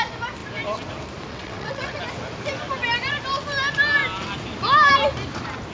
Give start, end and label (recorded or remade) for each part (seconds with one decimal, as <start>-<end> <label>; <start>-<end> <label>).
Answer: 0.0-1.3 recorded; 1.3-2.0 remade; 2.0-5.7 recorded